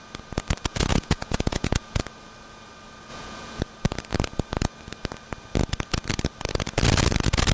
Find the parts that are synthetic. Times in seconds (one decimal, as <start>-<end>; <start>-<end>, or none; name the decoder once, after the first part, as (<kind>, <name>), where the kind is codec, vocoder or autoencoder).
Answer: 0.7-2.0 (vocoder, Vocos); 3.1-3.6